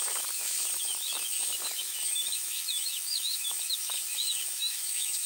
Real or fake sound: fake